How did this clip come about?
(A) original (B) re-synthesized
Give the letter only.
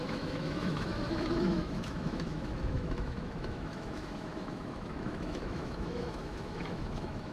B